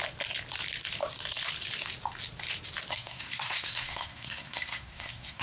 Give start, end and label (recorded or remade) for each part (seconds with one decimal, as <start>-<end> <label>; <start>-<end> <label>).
0.0-2.9 recorded; 2.9-5.4 remade